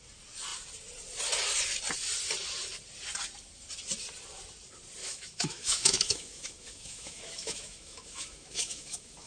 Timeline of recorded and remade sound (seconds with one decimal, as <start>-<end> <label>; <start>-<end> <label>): 0.0-5.0 recorded; 5.0-9.3 remade